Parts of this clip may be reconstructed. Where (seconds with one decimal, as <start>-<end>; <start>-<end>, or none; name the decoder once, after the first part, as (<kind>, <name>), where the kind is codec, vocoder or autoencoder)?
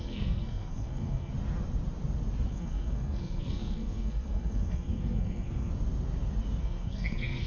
0.0-1.3 (codec, SNAC); 2.5-5.7; 6.6-7.5